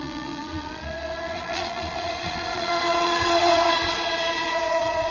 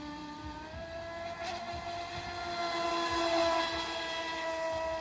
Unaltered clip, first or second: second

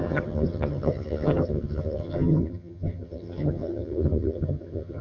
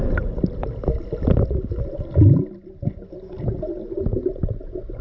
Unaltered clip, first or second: second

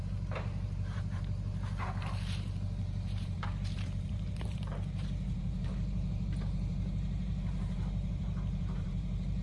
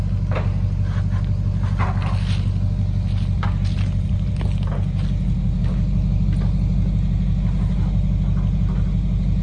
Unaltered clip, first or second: second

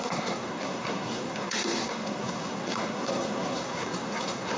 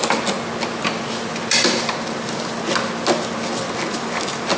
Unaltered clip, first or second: second